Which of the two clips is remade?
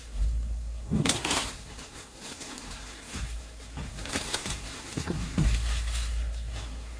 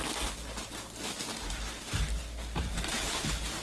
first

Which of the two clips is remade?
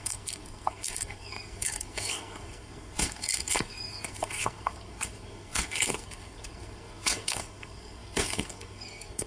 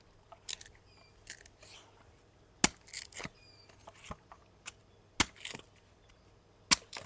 first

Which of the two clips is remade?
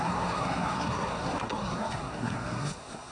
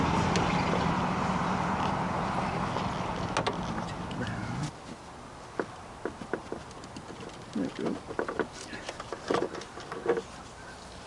first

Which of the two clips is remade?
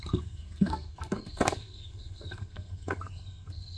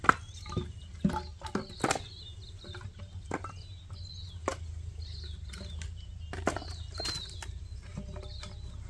first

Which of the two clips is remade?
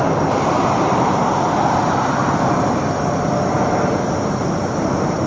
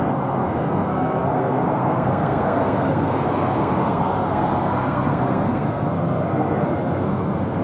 second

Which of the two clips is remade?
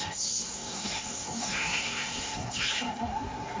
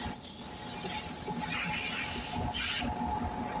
first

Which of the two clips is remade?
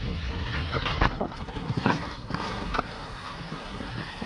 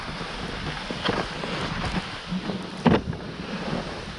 first